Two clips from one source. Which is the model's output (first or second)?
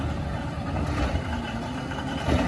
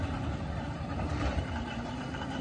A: second